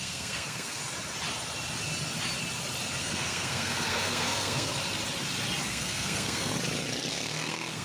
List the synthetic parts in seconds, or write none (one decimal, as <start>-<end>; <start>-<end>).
0.0-0.8; 3.0-4.7; 5.7-6.5; 7.1-7.8